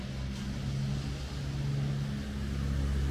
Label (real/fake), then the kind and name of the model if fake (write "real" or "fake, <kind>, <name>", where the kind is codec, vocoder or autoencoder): real